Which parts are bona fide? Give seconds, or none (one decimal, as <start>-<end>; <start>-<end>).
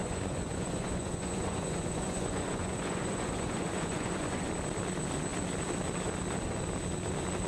4.5-7.5